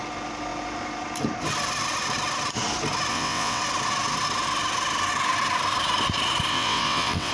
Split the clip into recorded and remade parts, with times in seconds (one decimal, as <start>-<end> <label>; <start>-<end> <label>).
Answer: 0.0-3.1 recorded; 3.1-3.6 remade; 3.6-6.5 recorded; 6.5-7.3 remade

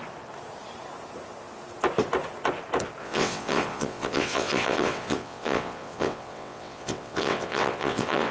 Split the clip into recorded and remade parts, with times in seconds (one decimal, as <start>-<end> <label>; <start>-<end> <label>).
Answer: 0.0-3.0 recorded; 3.0-8.3 remade

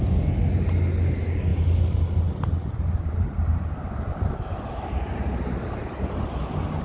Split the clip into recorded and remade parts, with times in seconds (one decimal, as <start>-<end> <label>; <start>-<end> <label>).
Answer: 0.0-6.8 recorded

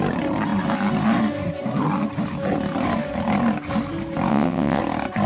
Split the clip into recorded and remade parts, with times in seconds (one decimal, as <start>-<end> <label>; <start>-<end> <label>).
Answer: 0.0-4.3 recorded; 4.3-4.8 remade; 4.8-5.3 recorded